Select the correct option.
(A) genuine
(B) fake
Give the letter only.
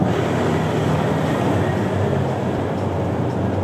A